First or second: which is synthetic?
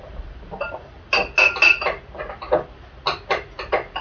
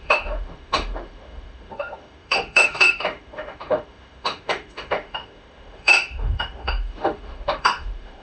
second